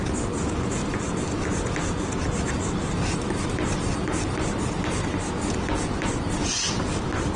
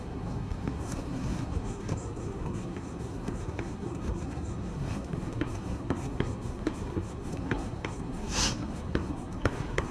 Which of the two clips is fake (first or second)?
second